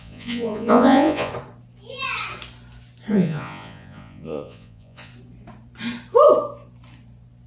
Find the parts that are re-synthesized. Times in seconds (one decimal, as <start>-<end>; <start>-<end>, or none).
0.0-1.3; 3.1-5.1